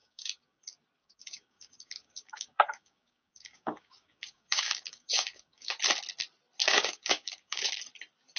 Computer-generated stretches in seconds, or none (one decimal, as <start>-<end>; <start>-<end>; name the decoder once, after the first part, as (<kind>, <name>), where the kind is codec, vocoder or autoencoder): 0.0-0.6 (codec, DAC); 1.0-5.8; 6.6-7.8